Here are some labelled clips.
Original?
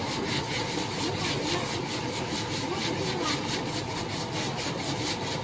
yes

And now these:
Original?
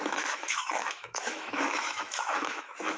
no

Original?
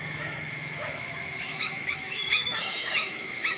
no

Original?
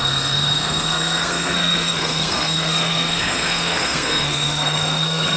no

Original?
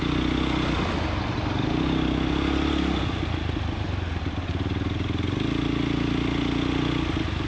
yes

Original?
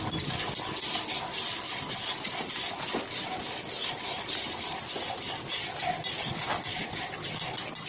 yes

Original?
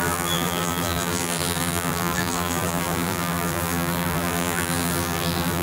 no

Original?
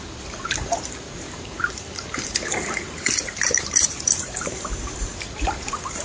no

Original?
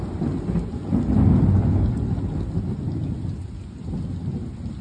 yes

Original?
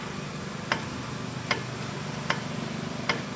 yes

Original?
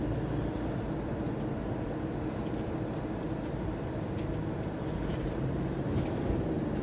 yes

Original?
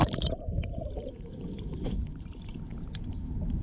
no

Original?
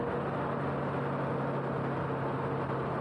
yes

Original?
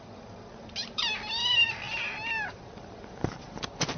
yes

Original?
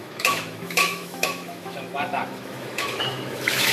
no